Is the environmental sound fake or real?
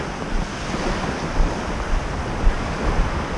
real